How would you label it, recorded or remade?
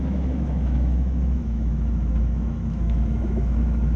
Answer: remade